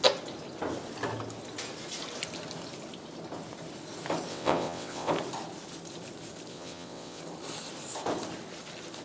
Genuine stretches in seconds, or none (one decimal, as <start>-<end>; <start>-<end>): 0.0-4.3; 5.1-6.5; 7.2-9.0